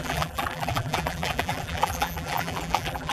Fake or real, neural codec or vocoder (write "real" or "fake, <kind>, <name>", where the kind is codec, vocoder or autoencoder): fake, vocoder, BigVGAN v2